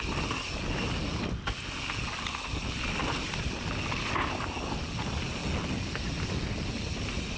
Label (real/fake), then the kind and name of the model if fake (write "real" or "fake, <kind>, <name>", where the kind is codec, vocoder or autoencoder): real